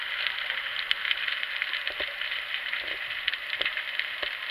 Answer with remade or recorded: recorded